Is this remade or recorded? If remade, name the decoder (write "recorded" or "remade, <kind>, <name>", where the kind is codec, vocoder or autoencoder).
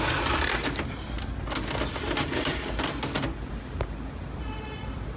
recorded